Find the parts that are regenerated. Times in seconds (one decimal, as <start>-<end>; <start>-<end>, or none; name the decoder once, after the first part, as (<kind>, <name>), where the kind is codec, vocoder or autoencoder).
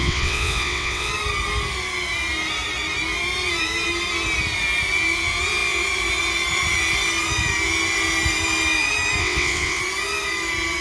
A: 0.0-1.1 (vocoder, WaveNeXt); 9.2-9.8